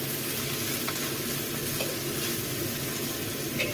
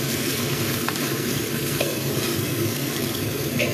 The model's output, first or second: second